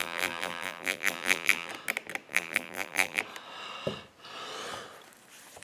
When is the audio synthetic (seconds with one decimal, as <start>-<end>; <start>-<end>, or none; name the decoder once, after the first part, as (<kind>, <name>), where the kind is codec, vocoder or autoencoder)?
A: 0.0-1.7 (vocoder, BigVGAN v2); 2.3-3.2